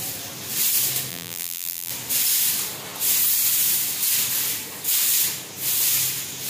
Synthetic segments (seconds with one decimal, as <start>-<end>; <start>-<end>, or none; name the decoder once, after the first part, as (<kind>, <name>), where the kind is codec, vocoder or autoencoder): 1.1-1.9 (vocoder, BigVGAN v2)